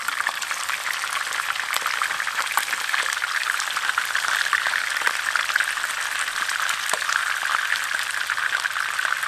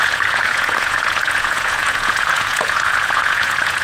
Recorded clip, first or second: first